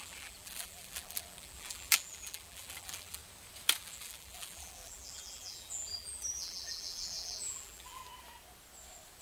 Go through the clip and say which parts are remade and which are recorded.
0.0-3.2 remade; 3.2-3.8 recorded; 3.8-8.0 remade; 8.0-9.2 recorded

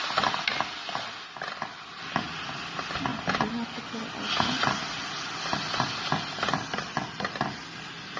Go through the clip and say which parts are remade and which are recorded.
0.0-3.1 recorded; 3.1-3.8 remade; 3.8-8.2 recorded

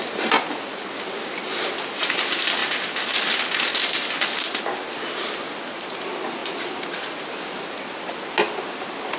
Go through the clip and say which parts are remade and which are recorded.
0.0-9.2 recorded

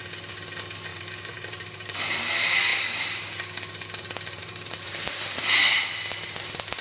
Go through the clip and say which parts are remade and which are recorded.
0.0-0.9 recorded; 0.9-2.2 remade; 2.2-4.4 recorded; 4.4-5.4 remade; 5.4-6.8 recorded

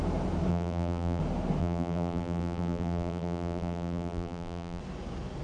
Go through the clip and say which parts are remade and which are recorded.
0.0-0.5 recorded; 0.5-1.2 remade; 1.2-1.6 recorded; 1.6-4.8 remade; 4.8-5.4 recorded

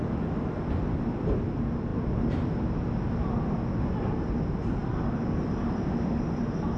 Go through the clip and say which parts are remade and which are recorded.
0.0-1.9 recorded; 1.9-2.6 remade; 2.6-4.8 recorded; 4.8-6.8 remade

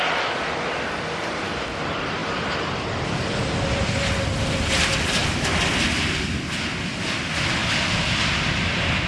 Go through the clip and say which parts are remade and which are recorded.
0.0-2.2 remade; 2.2-3.3 recorded; 3.3-5.2 remade; 5.2-6.5 recorded; 6.5-7.6 remade; 7.6-9.1 recorded